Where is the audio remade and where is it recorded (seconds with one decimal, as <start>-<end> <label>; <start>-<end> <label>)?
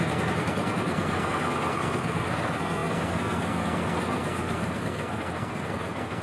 0.0-6.2 remade